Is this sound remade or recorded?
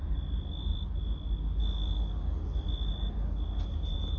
recorded